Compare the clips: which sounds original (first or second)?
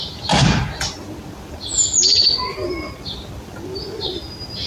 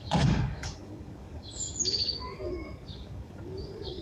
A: first